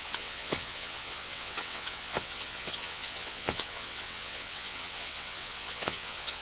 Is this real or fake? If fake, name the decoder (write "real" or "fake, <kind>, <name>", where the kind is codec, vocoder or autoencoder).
fake, vocoder, WaveNeXt